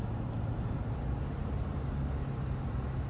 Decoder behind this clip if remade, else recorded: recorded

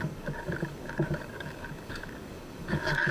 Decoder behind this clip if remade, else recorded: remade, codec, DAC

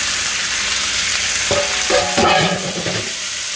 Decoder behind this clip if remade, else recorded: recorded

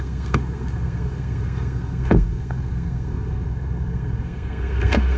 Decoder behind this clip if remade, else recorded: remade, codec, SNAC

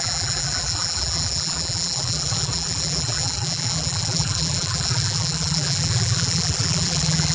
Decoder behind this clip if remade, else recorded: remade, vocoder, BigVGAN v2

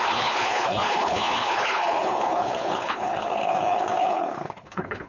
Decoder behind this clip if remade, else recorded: remade, codec, HILCodec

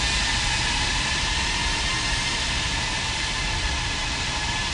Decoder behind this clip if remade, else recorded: recorded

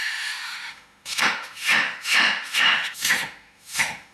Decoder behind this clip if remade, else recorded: remade, autoencoder, DAC-VAE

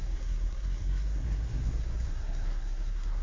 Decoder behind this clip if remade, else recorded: remade, codec, SNAC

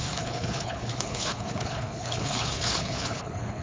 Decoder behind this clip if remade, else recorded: remade, codec, HILCodec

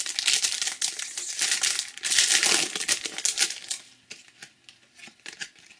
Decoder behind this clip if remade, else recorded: recorded